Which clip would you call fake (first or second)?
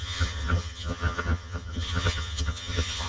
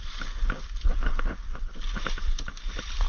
first